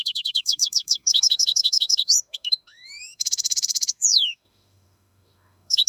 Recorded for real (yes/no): no